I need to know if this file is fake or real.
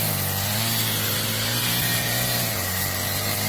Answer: fake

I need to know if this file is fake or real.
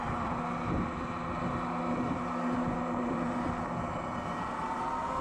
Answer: real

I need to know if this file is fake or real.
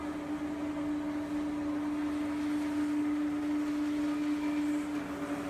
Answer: real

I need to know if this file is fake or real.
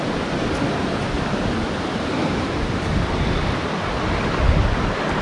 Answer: real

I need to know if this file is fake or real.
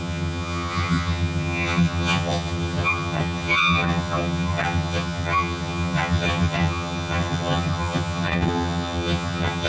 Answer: fake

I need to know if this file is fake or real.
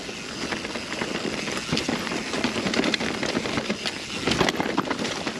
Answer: real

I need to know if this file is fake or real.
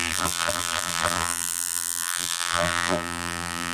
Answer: fake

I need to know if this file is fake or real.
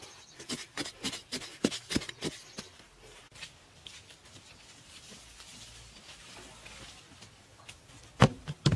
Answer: real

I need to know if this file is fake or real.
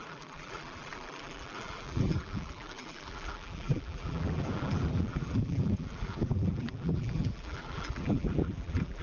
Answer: fake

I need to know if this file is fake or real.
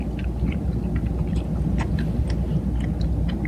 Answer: real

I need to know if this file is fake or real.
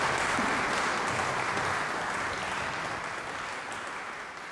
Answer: real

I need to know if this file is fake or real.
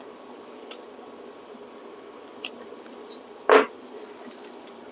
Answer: fake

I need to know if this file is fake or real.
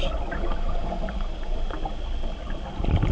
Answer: real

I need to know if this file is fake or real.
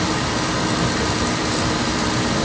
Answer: fake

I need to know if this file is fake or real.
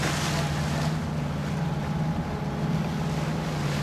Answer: real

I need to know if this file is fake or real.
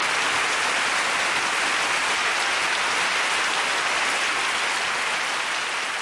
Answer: real